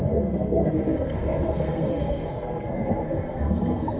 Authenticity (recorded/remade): remade